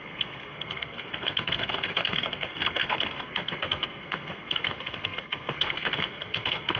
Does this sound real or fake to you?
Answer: fake